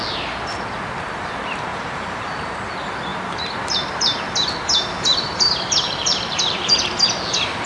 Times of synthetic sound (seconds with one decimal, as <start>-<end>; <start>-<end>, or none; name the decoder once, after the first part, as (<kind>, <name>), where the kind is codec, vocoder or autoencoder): 1.7-2.7 (vocoder, BigVGAN v2); 3.1-6.9